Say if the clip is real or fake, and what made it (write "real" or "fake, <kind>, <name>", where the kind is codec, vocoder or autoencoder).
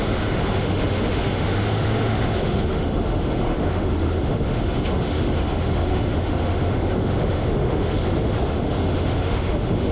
fake, autoencoder, DAC-VAE